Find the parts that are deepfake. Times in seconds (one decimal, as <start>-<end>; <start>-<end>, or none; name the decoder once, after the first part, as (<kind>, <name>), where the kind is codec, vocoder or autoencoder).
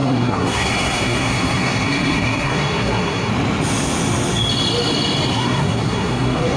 0.0-3.3 (codec, SNAC); 5.3-6.6